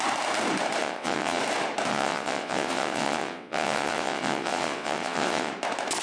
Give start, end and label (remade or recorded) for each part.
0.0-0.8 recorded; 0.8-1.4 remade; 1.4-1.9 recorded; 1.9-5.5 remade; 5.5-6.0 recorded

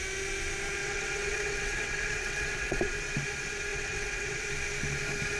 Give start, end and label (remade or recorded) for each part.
0.0-0.8 recorded; 0.8-2.8 remade; 2.8-3.7 recorded; 3.7-4.4 remade; 4.4-5.4 recorded

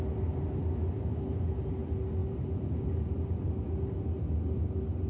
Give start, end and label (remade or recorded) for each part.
0.0-5.1 recorded

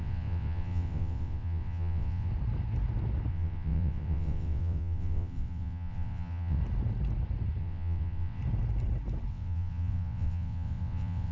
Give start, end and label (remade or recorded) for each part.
0.0-2.3 remade; 2.3-3.3 recorded; 3.3-6.6 remade; 6.6-7.6 recorded; 7.6-8.4 remade; 8.4-9.3 recorded; 9.3-11.3 remade

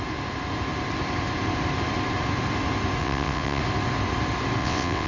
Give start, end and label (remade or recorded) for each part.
0.0-3.0 recorded; 3.0-3.6 remade; 3.6-4.6 recorded; 4.6-5.1 remade

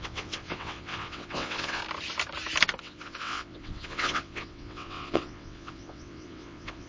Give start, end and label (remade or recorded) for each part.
0.0-1.8 remade; 1.8-2.8 recorded; 2.8-6.9 remade

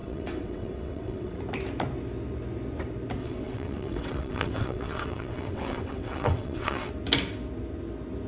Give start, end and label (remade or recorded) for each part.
0.0-1.3 remade; 1.3-3.2 recorded; 3.2-6.9 remade; 6.9-8.3 recorded

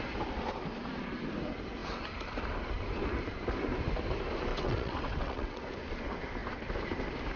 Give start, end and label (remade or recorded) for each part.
0.0-4.5 recorded; 4.5-5.6 remade; 5.6-7.4 recorded